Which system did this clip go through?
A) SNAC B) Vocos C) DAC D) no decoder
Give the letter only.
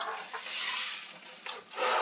D